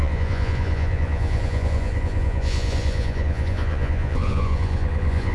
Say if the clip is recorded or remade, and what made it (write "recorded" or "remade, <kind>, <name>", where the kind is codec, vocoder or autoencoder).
remade, vocoder, Vocos